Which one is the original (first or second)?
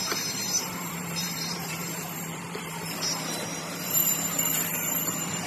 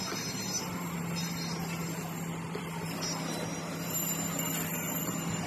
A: second